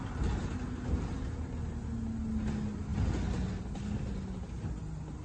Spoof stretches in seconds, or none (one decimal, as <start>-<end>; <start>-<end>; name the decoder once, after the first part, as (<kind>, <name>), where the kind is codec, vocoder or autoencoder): none